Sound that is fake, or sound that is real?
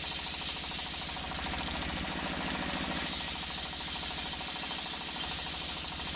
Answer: real